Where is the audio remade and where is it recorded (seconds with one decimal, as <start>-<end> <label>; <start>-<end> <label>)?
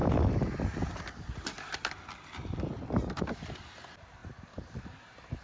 0.0-5.4 recorded